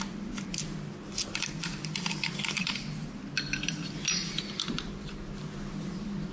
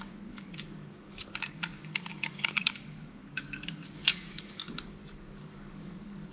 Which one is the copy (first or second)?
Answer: second